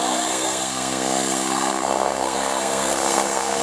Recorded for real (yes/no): no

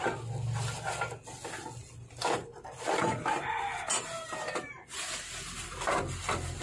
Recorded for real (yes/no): yes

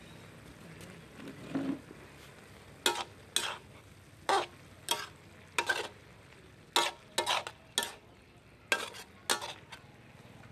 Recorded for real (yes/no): yes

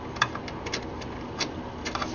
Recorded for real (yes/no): yes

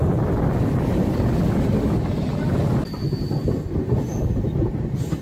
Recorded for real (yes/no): yes